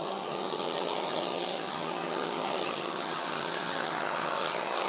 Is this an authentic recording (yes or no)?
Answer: no